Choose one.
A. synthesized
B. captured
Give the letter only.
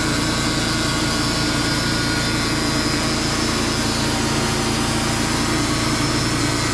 B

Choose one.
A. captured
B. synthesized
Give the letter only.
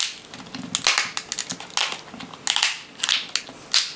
A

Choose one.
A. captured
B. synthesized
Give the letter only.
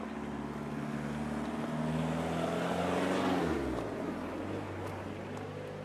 A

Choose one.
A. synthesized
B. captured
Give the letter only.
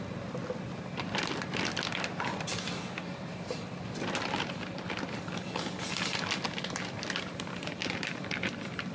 B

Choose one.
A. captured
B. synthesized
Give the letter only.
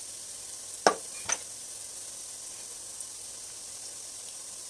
A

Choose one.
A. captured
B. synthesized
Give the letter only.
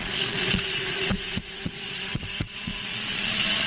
B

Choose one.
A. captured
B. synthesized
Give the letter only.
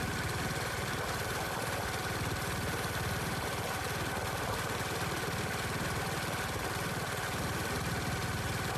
A